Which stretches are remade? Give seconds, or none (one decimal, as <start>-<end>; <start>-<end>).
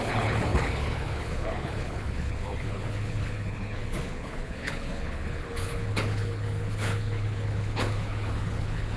0.0-9.0